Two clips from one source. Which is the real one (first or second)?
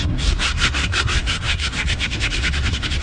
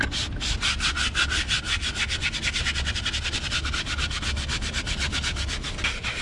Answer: second